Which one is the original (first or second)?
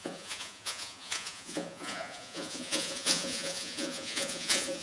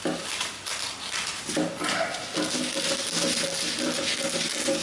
second